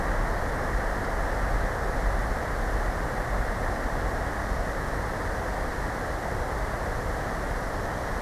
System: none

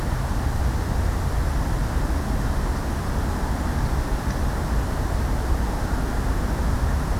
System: none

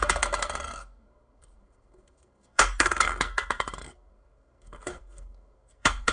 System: codec, SNAC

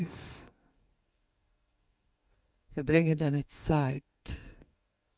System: codec, SNAC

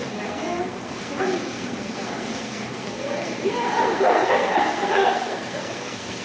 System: codec, SNAC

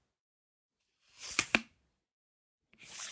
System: none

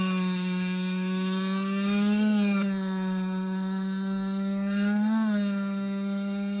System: codec, SNAC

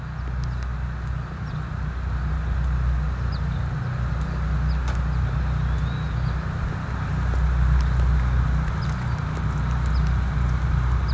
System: none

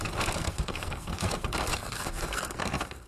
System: codec, SNAC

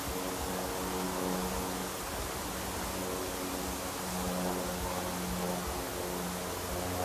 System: none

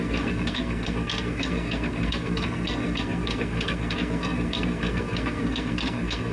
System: codec, SNAC